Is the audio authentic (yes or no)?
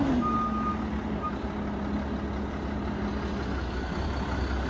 yes